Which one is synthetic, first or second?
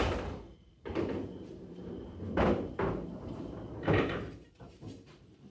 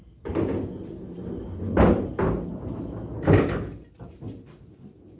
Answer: first